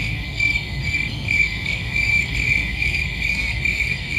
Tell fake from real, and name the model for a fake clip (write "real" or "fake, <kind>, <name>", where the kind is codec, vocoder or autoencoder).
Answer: fake, codec, SNAC